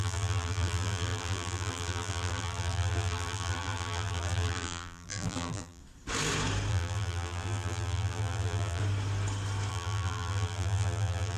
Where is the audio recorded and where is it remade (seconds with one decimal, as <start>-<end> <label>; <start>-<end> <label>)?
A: 0.0-5.8 remade; 5.8-6.7 recorded; 6.7-8.8 remade; 8.8-9.7 recorded; 9.7-11.4 remade